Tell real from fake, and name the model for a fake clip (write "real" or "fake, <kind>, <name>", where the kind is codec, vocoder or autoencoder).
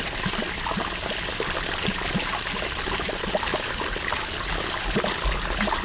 real